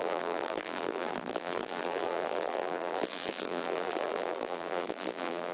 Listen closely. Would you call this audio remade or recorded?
remade